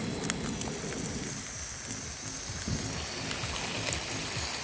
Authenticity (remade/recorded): recorded